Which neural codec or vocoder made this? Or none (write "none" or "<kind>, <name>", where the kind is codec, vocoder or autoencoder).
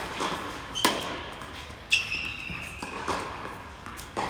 codec, DAC